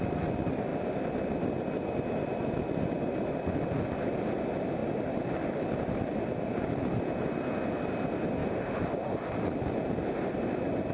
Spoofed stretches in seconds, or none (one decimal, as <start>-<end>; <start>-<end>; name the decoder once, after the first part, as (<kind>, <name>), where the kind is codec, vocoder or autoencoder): none